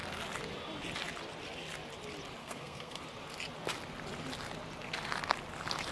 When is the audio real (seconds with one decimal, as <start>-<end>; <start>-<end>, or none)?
0.0-2.4; 3.0-5.9